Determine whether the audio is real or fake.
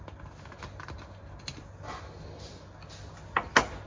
real